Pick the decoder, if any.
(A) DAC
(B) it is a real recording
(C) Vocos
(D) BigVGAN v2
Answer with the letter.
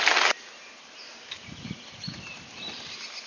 B